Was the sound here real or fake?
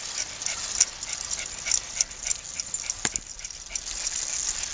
real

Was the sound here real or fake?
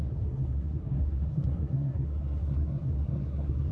fake